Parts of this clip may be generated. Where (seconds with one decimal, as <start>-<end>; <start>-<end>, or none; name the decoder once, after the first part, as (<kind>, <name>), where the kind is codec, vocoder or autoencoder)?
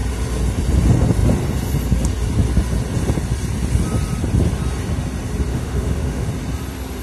5.5-6.3 (autoencoder, DAC-VAE)